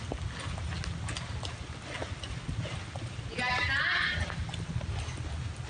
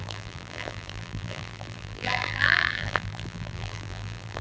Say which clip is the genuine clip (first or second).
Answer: first